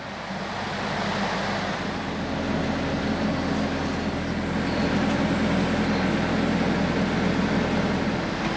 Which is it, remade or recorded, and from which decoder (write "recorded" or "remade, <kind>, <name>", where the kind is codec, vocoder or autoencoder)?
recorded